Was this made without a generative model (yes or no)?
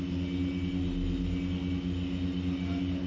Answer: yes